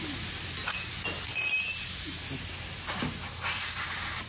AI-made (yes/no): no